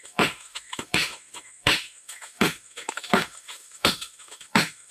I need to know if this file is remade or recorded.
remade